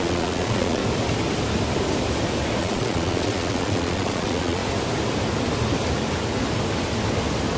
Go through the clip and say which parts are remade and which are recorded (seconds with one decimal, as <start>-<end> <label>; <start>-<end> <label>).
0.0-0.8 remade; 0.8-2.6 recorded; 2.6-4.6 remade; 4.6-7.6 recorded

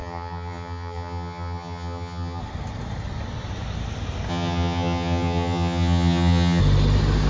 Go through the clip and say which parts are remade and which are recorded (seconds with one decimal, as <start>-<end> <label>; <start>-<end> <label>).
0.0-2.4 remade; 2.4-4.3 recorded; 4.3-6.6 remade; 6.6-7.3 recorded

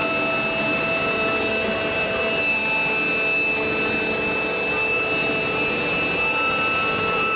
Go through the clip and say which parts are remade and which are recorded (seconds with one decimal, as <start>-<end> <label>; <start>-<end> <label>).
0.0-0.6 recorded; 0.6-2.6 remade; 2.6-4.7 recorded; 4.7-7.4 remade

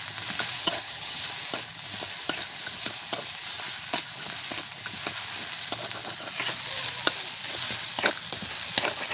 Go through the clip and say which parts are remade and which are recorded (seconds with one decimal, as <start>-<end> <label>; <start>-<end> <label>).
0.0-0.6 recorded; 0.6-1.2 remade; 1.2-9.1 recorded

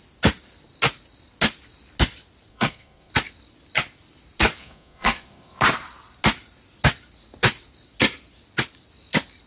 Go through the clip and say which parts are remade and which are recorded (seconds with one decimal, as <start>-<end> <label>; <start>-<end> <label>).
0.0-2.5 recorded; 2.5-3.1 remade; 3.1-4.6 recorded; 4.6-5.6 remade; 5.6-9.5 recorded

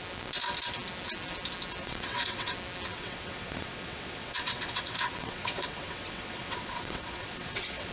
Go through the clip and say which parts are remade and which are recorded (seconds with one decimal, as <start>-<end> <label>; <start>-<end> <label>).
0.0-1.8 recorded; 1.8-2.5 remade; 2.5-2.9 recorded; 2.9-7.9 remade

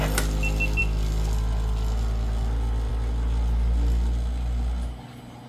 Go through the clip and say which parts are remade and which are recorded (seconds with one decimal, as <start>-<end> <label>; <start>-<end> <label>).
0.0-5.5 recorded

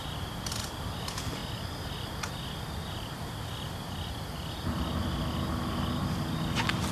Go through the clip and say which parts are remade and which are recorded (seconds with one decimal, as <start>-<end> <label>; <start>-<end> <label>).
0.0-6.9 recorded